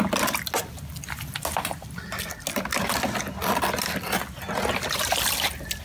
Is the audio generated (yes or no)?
no